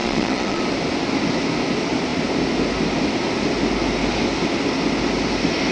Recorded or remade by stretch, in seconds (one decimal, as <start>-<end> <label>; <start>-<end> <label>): 0.0-0.6 remade; 0.6-5.7 recorded